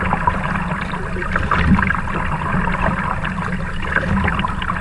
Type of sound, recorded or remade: recorded